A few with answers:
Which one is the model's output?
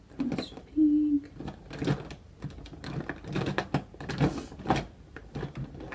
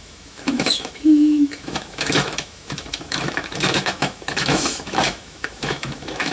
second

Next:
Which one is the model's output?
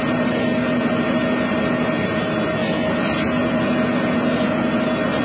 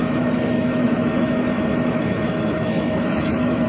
second